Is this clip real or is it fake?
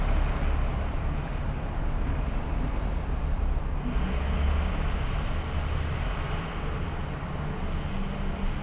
real